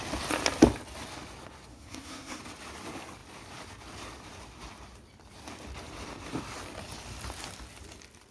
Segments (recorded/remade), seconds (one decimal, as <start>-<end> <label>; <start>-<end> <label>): 0.0-1.7 recorded; 1.7-2.4 remade; 2.4-8.3 recorded